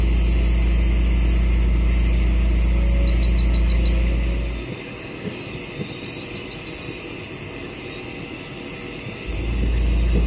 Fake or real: real